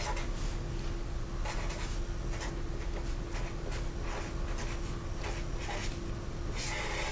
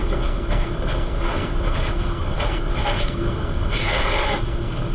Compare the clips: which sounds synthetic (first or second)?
second